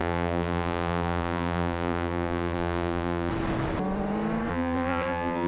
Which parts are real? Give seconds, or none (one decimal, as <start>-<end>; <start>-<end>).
3.3-4.5